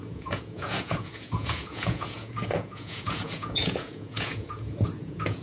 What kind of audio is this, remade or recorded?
remade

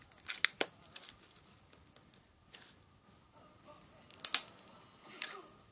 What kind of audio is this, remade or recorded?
recorded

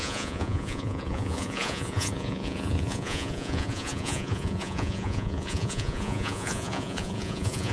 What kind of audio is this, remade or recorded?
remade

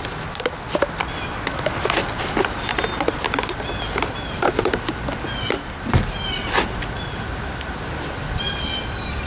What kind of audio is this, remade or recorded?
recorded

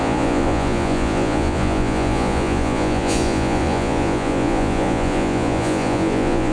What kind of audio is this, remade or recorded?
remade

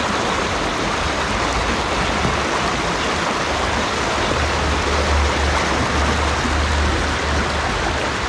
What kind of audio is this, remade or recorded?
recorded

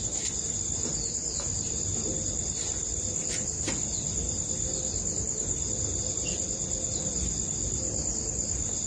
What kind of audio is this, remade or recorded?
recorded